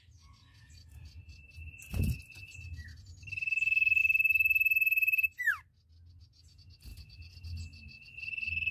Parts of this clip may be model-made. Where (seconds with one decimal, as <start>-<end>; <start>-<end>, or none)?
none